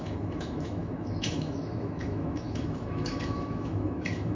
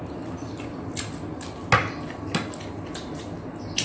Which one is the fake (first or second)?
first